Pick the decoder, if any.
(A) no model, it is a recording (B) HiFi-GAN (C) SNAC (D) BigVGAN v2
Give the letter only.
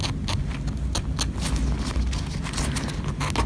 A